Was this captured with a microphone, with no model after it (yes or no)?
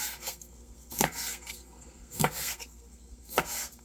no